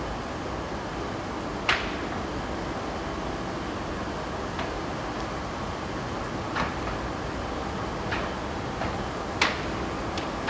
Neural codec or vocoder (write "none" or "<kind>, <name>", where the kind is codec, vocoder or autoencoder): none